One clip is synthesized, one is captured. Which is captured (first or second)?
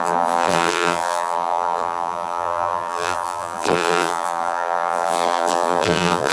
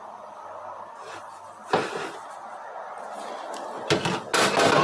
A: second